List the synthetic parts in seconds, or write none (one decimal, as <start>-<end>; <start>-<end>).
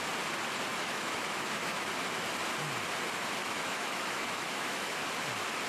0.7-1.9; 3.4-4.9